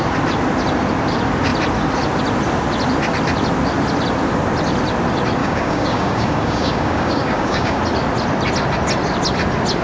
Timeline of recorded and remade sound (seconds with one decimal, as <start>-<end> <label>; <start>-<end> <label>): 0.0-5.4 recorded; 5.4-7.8 remade; 7.8-9.8 recorded